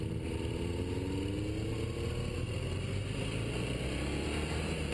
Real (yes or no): yes